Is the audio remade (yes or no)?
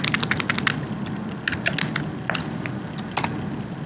no